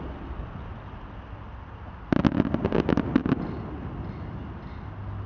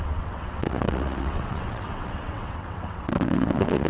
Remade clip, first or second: second